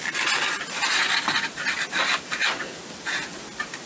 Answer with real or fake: real